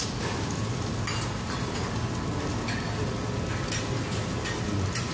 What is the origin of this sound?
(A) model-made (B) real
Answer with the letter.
B